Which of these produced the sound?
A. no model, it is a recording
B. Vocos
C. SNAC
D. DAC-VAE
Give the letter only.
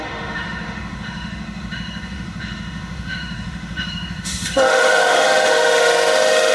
D